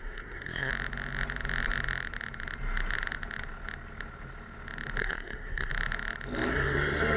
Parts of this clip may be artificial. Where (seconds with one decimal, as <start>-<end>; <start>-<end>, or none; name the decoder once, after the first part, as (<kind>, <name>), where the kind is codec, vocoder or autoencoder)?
0.0-0.7 (codec, SNAC); 5.0-5.7; 6.5-7.2